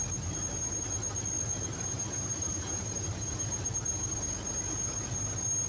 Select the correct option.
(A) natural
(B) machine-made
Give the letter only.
A